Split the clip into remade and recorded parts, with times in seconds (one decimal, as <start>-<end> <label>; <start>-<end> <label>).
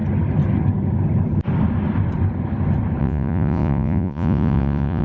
0.0-3.0 recorded; 3.0-5.0 remade